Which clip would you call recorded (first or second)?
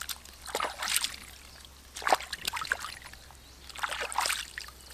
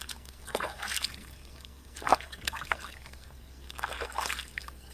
first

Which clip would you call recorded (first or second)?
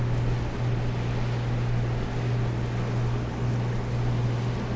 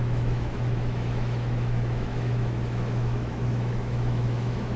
first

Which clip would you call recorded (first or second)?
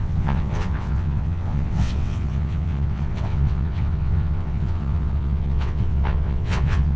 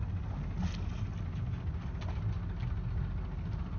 second